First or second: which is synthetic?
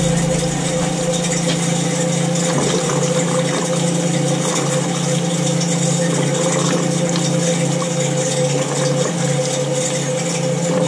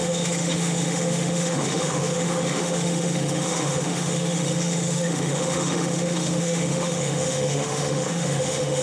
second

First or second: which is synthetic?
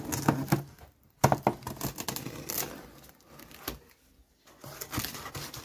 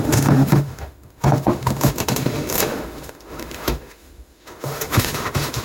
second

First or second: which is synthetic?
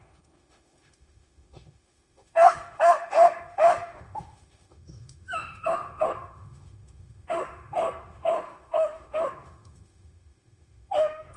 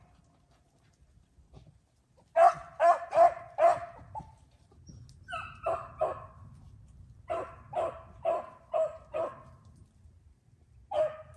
first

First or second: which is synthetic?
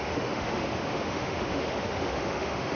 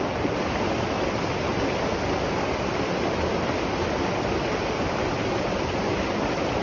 first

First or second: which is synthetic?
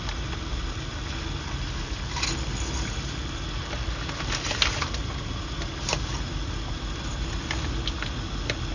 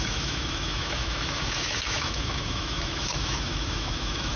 second